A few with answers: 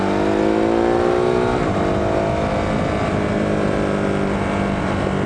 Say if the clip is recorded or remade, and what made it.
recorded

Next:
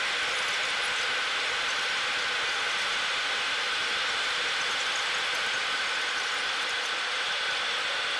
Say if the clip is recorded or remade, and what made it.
recorded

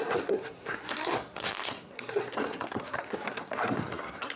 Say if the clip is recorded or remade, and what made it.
remade, codec, SNAC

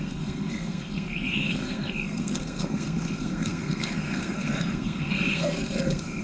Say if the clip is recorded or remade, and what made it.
remade, codec, SNAC